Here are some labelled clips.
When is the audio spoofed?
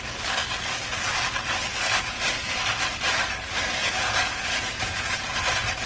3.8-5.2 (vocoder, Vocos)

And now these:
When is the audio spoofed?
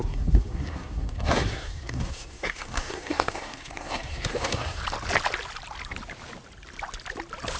0.0-4.8 (codec, SNAC)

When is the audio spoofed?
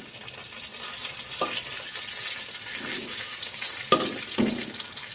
2.9-3.7 (codec, DAC)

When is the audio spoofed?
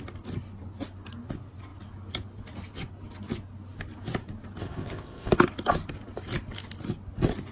4.6-5.3 (codec, ZipCodec)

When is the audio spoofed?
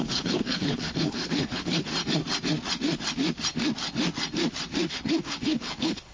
0.0-1.9 (codec, HILCodec); 4.9-6.1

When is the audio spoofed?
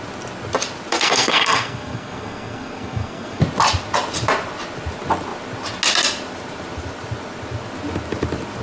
0.9-3.4 (codec, SNAC)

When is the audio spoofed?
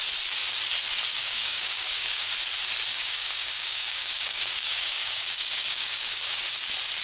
1.2-2.3 (codec, DAC); 2.9-6.4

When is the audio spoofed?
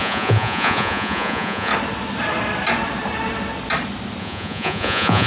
0.0-1.7 (vocoder, Vocos); 4.2-5.3